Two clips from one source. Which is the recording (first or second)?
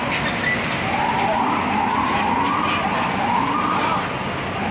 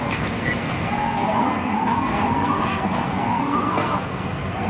first